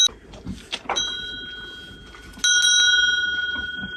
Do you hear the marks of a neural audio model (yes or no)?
no